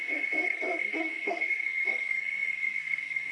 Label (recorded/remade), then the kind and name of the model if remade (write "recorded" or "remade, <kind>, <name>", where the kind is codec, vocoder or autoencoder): remade, codec, SNAC